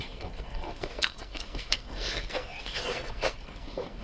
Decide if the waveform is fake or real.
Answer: fake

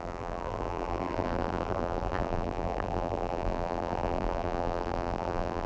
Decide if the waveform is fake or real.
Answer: fake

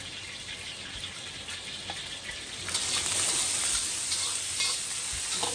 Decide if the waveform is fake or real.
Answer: real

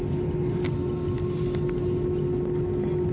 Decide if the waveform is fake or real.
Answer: real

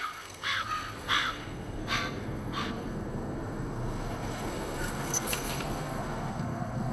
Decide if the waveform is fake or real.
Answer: fake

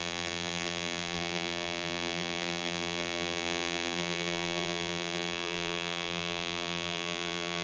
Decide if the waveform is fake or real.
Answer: fake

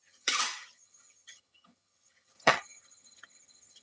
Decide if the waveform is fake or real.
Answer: fake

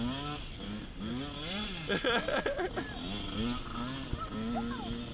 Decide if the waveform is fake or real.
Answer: real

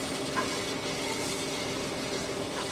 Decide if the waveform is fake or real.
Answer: real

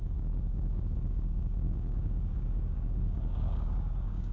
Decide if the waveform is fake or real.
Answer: fake